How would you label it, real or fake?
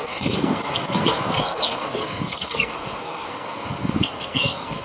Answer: fake